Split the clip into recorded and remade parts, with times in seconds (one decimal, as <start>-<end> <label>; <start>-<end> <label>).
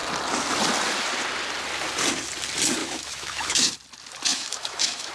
0.0-2.8 recorded; 2.8-3.7 remade; 3.7-4.3 recorded; 4.3-5.1 remade